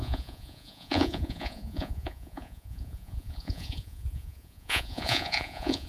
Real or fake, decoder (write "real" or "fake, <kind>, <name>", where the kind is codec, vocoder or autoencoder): fake, vocoder, Vocos